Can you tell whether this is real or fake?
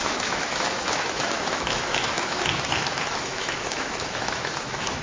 fake